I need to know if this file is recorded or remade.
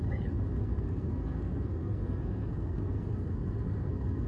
remade